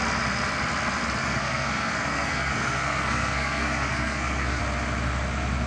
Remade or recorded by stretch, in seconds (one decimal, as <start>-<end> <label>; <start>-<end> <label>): 0.0-1.2 recorded; 1.2-4.6 remade; 4.6-5.7 recorded